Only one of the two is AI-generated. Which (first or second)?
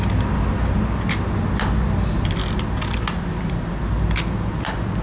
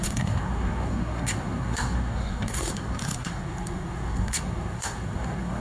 second